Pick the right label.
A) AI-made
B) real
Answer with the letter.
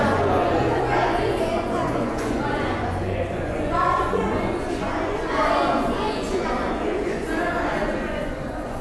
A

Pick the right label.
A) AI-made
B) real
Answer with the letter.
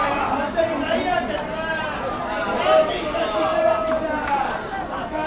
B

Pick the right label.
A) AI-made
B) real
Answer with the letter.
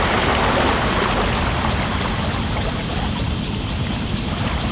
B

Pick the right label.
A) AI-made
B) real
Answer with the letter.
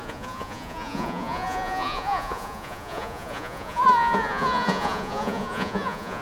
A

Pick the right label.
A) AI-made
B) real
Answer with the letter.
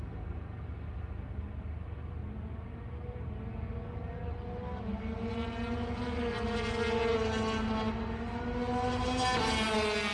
B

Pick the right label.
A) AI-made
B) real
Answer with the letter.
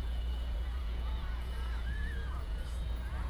A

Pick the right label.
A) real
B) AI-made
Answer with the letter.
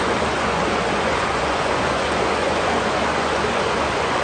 B